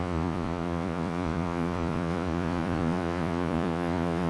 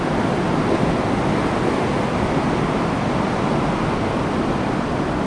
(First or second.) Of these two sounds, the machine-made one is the first